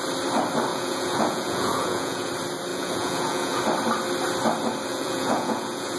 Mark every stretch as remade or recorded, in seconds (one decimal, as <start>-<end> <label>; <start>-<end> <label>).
0.0-0.7 recorded; 0.7-2.3 remade; 2.3-2.7 recorded; 2.7-3.6 remade; 3.6-4.9 recorded; 4.9-6.0 remade

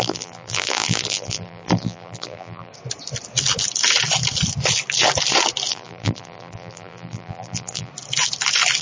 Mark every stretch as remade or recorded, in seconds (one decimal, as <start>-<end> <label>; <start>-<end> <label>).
0.0-2.7 remade; 2.7-5.7 recorded; 5.7-7.9 remade; 7.9-8.8 recorded

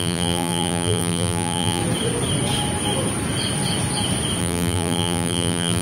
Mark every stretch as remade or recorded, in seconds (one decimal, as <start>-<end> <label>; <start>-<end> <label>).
0.0-1.8 remade; 1.8-4.4 recorded; 4.4-5.8 remade

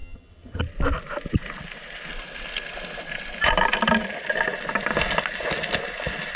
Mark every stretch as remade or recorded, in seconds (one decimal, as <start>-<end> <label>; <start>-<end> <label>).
0.0-0.6 remade; 0.6-6.4 recorded

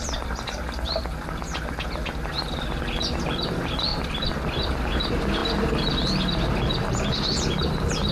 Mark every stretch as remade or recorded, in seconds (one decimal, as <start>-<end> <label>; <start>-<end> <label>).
0.0-3.9 recorded; 3.9-4.6 remade; 4.6-8.1 recorded

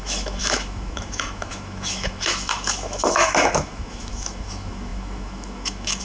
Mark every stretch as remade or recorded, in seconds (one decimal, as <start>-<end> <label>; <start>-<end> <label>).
0.0-6.0 remade

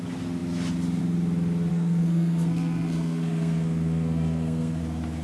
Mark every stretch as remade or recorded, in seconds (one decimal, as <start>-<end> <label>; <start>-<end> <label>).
0.0-1.7 recorded; 1.7-4.8 remade; 4.8-5.2 recorded

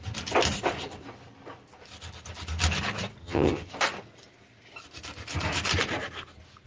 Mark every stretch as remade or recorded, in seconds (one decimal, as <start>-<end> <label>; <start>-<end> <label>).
0.0-3.2 recorded; 3.2-3.7 remade; 3.7-6.7 recorded